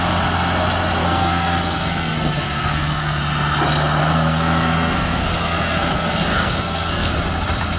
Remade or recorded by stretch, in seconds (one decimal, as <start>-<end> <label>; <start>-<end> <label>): 0.0-1.0 recorded; 1.0-3.2 remade; 3.2-4.0 recorded; 4.0-7.1 remade; 7.1-7.8 recorded